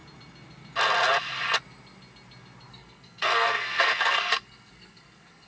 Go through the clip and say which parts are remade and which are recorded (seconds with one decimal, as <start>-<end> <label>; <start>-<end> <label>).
0.0-2.7 recorded; 2.7-5.5 remade